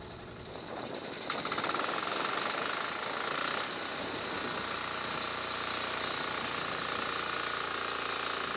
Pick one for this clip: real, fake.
real